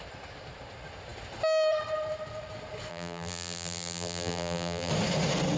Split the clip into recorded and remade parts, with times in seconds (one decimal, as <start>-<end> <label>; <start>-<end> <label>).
0.0-2.9 recorded; 2.9-4.9 remade; 4.9-5.6 recorded